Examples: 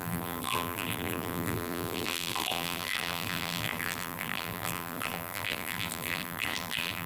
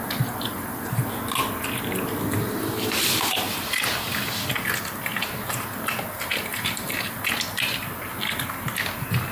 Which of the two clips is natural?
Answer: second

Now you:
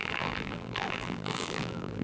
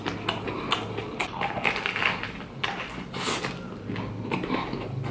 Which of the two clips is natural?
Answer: second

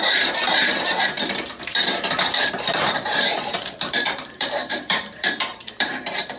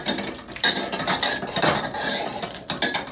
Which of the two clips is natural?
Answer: second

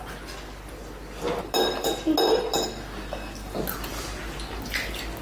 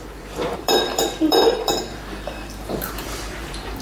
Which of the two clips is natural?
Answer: first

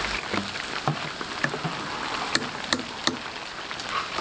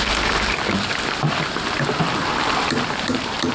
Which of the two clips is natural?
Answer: first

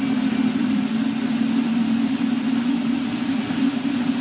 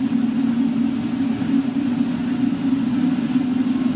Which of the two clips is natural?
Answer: second